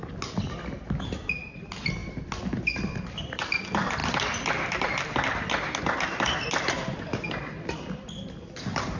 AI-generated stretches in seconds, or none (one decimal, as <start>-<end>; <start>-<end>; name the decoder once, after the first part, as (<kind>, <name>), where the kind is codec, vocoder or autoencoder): none